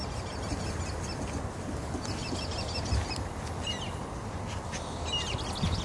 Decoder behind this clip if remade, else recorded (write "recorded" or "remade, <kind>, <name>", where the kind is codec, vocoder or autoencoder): recorded